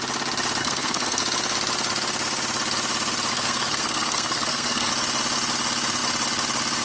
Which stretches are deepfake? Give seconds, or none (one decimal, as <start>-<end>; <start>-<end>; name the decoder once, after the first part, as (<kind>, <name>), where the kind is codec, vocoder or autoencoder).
0.6-1.2 (codec, SNAC); 3.3-4.9